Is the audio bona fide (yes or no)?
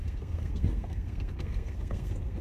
no